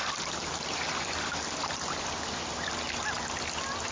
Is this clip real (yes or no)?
yes